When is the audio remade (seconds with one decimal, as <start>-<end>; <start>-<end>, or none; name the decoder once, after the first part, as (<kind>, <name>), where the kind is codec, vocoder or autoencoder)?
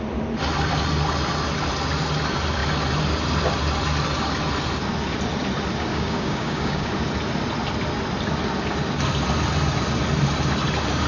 5.9-6.9 (codec, DAC)